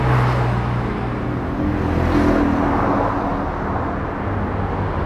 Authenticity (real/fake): real